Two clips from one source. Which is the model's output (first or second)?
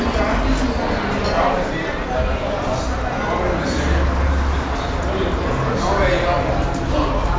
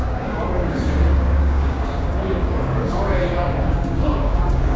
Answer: second